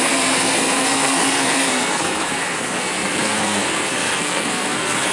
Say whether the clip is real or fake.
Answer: fake